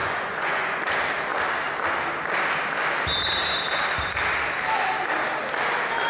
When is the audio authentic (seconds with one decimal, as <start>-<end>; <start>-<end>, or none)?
0.8-6.1